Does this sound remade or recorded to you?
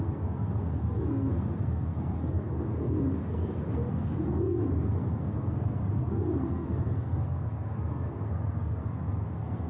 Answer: remade